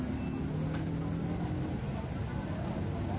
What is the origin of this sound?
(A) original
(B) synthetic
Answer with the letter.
A